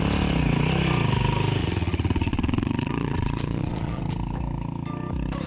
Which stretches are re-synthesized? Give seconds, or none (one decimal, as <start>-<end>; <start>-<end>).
1.6-4.0

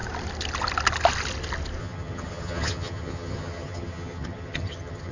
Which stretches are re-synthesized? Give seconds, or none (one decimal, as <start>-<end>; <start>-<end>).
1.8-5.1